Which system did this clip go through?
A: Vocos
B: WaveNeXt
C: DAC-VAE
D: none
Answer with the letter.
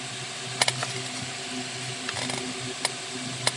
D